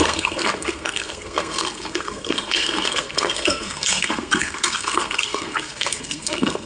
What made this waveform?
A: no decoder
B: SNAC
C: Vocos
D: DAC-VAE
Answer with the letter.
B